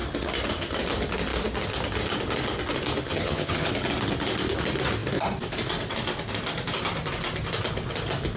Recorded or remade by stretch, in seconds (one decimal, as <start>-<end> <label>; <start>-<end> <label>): 0.0-3.1 recorded; 3.1-3.7 remade; 3.7-8.4 recorded